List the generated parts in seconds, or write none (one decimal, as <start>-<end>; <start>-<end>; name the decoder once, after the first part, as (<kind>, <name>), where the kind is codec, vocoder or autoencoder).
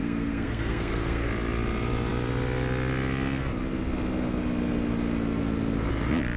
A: 0.0-1.3 (codec, SNAC)